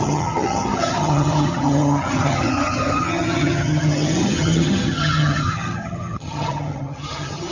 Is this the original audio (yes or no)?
no